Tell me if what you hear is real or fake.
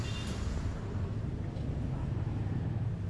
real